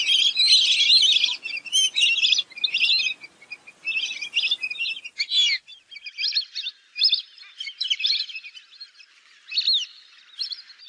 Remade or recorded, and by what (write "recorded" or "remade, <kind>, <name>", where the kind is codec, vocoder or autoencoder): recorded